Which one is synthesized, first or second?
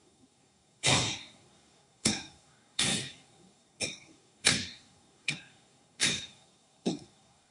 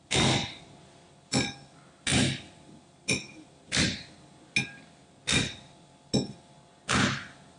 first